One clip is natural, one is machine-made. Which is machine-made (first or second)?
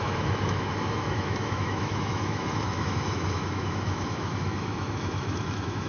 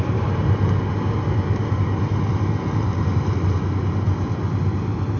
first